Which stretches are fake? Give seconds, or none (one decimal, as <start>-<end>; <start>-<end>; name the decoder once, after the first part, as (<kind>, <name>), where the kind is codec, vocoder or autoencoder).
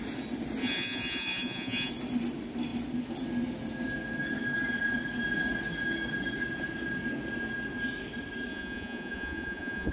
0.6-1.9 (vocoder, Vocos); 8.5-9.9